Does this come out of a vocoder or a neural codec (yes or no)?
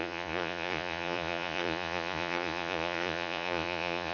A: yes